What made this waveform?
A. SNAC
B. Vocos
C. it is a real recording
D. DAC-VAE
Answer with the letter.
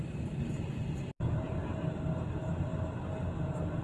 C